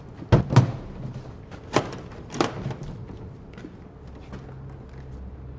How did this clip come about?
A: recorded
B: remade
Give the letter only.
A